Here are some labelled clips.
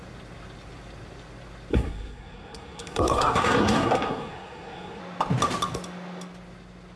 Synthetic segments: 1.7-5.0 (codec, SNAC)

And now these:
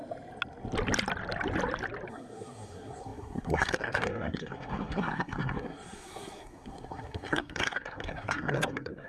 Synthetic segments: 2.1-9.1 (codec, SNAC)